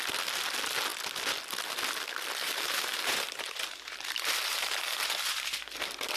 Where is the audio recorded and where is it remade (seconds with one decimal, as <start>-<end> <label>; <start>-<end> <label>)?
0.0-2.4 recorded; 2.4-5.2 remade; 5.2-6.2 recorded